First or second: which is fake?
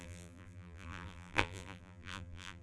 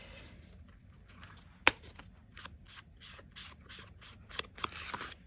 first